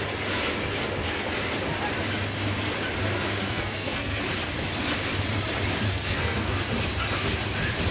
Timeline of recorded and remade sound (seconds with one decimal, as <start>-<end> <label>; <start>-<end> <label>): 0.0-3.4 recorded; 3.4-4.2 remade; 4.2-5.9 recorded; 5.9-6.5 remade; 6.5-7.9 recorded

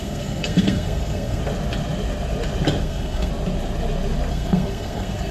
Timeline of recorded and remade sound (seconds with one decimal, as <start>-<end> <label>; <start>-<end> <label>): 0.0-1.4 remade; 1.4-2.8 recorded; 2.8-3.3 remade; 3.3-4.3 recorded; 4.3-5.3 remade